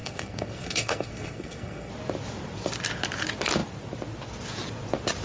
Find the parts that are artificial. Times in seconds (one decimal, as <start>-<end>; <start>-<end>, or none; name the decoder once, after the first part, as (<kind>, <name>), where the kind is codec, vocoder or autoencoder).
0.0-1.9 (codec, SNAC)